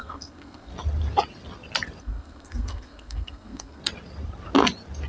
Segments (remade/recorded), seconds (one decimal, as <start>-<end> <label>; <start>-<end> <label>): 0.0-0.7 remade; 0.7-2.0 recorded; 2.0-3.8 remade; 3.8-5.1 recorded